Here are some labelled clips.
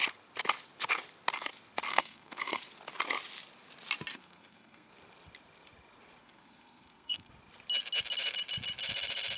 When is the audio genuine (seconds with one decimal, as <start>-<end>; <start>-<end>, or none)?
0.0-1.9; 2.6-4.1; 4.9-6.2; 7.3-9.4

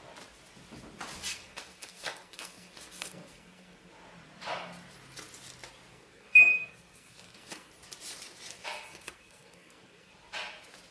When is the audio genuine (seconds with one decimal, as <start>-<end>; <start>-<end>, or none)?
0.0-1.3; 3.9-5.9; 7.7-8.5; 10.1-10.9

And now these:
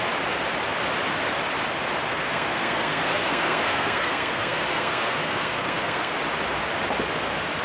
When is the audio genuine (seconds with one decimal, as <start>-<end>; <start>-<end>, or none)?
0.0-2.1; 6.1-7.6

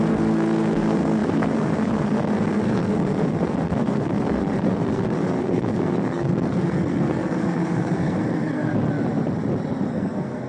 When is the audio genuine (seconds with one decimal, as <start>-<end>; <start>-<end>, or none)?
8.7-9.9

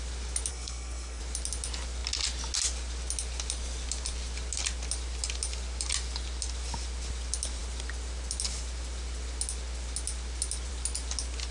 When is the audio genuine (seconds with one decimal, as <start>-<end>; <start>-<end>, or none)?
0.0-0.5; 1.2-11.5

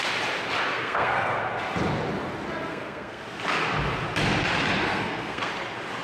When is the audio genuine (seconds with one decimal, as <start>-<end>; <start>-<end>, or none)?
0.0-0.7; 1.4-2.7; 3.2-4.9; 5.5-6.0